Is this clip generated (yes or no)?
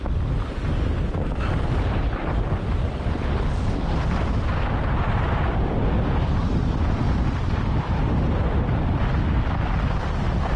no